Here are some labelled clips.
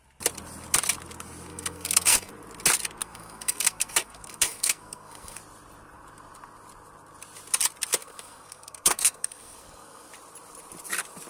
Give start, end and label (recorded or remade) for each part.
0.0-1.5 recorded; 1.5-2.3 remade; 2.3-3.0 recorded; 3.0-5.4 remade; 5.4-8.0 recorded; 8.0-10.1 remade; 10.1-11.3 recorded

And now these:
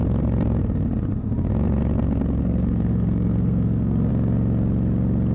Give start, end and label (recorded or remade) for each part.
0.0-2.4 recorded; 2.4-4.1 remade; 4.1-5.3 recorded

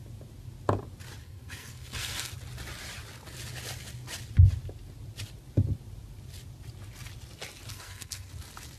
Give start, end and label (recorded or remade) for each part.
0.0-1.2 recorded; 1.2-2.3 remade; 2.3-7.7 recorded; 7.7-8.3 remade; 8.3-8.8 recorded

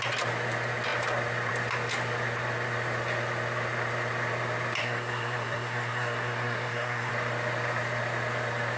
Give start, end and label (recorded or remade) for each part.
0.0-4.8 recorded; 4.8-7.1 remade; 7.1-8.8 recorded

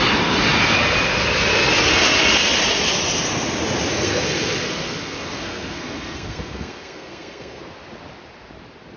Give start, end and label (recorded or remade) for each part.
0.0-3.9 recorded; 3.9-7.6 remade; 7.6-9.0 recorded